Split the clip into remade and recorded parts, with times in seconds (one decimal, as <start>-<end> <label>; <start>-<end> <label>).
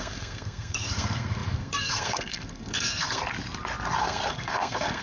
0.0-3.2 remade; 3.2-4.0 recorded; 4.0-5.0 remade